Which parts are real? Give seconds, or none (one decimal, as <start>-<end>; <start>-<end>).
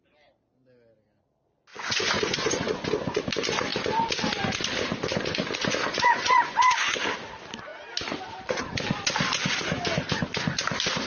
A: 0.0-1.7; 3.2-5.9; 7.0-11.1